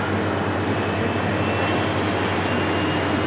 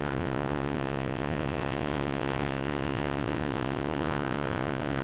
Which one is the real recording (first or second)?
first